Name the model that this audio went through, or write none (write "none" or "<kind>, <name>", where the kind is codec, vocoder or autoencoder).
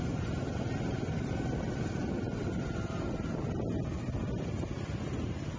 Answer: none